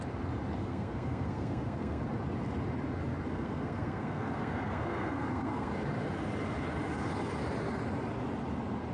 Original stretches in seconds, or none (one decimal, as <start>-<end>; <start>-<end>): 0.0-0.6; 2.0-3.3; 5.7-8.9